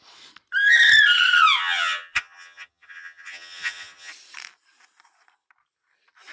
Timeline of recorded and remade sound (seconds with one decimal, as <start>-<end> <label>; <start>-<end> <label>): 0.0-1.6 recorded; 1.6-4.1 remade; 4.1-6.3 recorded